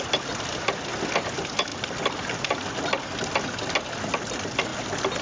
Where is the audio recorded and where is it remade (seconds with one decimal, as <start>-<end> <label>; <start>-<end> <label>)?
0.0-5.2 recorded